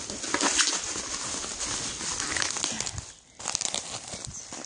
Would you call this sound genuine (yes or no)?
yes